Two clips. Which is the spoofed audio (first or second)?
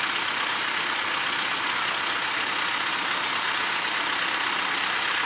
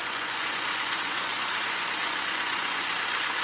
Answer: second